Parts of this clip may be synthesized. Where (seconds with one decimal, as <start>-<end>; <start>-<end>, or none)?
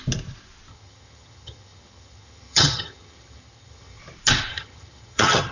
0.7-4.0; 4.5-5.5